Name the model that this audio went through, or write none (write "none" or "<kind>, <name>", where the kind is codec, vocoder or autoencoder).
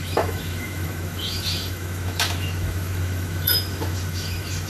autoencoder, DAC-VAE